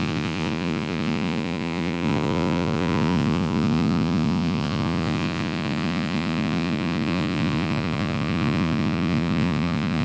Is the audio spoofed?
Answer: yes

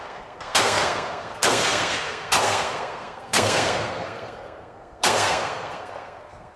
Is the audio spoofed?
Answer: yes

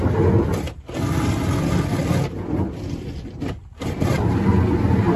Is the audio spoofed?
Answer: no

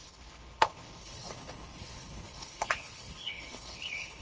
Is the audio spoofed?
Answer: yes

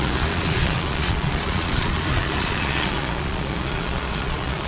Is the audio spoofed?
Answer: yes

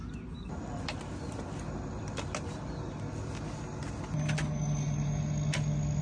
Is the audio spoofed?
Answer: no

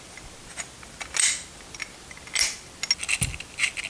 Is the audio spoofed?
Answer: no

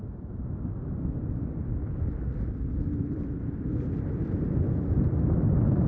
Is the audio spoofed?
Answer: no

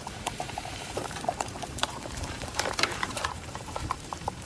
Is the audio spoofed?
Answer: yes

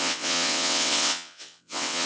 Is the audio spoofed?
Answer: yes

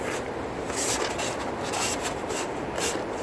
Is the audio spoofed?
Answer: no